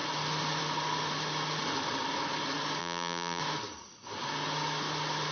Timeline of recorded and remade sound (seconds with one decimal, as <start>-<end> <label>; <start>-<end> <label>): 0.0-2.8 recorded; 2.8-3.4 remade; 3.4-5.3 recorded